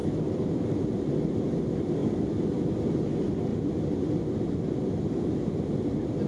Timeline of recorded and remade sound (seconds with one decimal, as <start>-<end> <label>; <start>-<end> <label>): 0.0-2.0 recorded; 2.0-2.9 remade; 2.9-3.5 recorded; 3.5-4.1 remade; 4.1-6.3 recorded